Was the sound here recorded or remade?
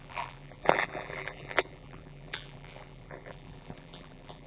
remade